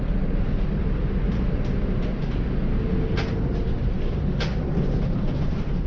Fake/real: real